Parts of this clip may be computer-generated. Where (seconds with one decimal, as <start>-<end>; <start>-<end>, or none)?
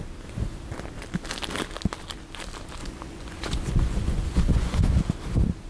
2.8-4.8